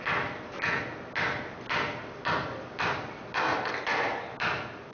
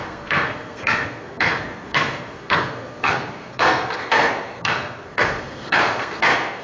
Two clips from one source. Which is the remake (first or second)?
second